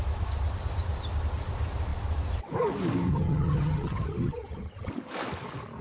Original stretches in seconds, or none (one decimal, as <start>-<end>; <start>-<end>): 0.0-3.1; 4.9-5.8